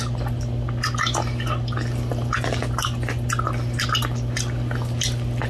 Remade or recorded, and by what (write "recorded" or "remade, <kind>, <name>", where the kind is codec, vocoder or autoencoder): recorded